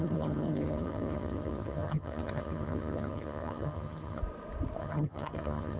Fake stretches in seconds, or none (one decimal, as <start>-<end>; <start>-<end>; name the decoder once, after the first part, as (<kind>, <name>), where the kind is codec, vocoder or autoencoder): 0.0-4.2 (vocoder, HiFi-GAN); 4.8-5.8